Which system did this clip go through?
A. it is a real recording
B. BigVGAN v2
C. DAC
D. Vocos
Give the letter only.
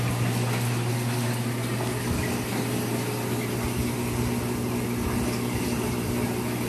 A